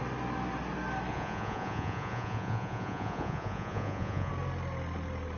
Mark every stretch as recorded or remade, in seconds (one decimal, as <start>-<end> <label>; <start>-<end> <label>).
0.0-1.1 recorded; 1.1-4.3 remade; 4.3-5.4 recorded